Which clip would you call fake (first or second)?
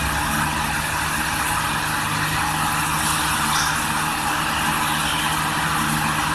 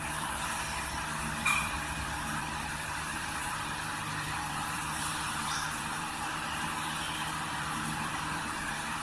second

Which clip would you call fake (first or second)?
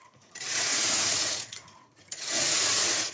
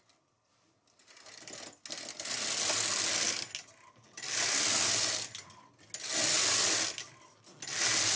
first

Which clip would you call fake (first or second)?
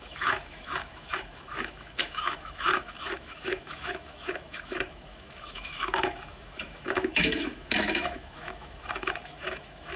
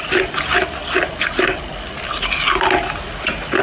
first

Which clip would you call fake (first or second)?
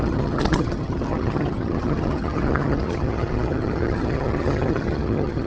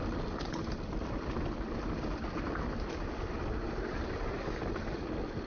first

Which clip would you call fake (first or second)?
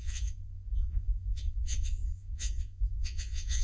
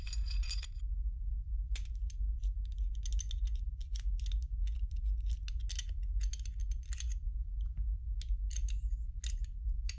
first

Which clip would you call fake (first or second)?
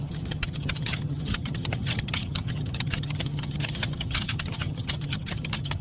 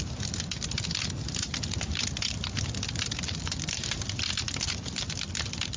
first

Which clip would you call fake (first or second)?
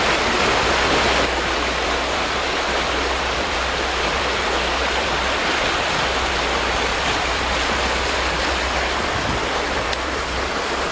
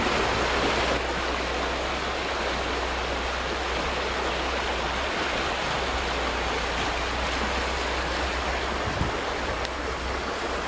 first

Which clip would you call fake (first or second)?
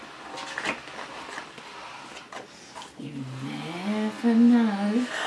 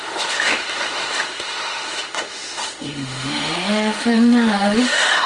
second